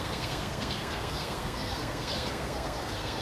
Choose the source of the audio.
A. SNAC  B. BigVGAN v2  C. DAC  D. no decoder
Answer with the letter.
A